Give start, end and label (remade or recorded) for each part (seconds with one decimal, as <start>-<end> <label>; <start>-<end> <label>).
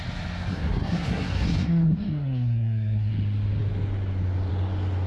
0.0-0.5 recorded; 0.5-3.1 remade; 3.1-5.1 recorded